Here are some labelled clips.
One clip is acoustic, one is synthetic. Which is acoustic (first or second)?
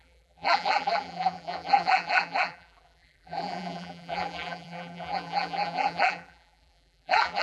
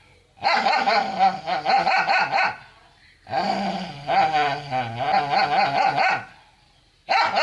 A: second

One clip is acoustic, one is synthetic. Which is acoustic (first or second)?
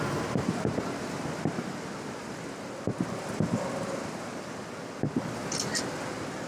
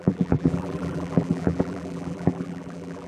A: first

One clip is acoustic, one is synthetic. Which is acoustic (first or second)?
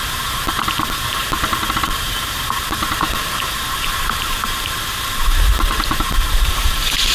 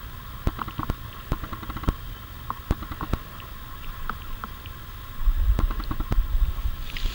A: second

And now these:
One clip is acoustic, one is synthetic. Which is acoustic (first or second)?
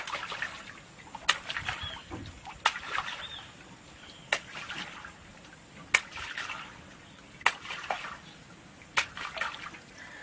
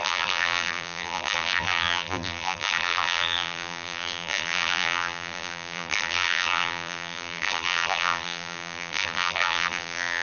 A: first